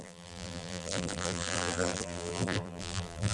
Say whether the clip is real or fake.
fake